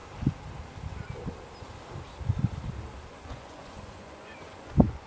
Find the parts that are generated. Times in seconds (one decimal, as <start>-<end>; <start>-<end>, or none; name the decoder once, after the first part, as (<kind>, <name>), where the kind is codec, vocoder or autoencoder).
3.1-5.1 (vocoder, Vocos)